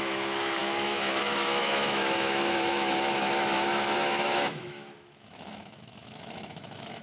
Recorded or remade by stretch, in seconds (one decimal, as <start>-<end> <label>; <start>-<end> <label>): 0.0-7.0 remade